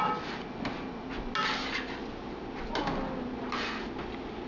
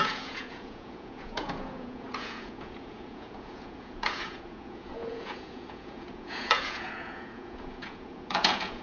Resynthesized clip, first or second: second